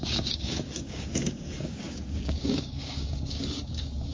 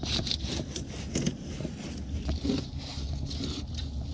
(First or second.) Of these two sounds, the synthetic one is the first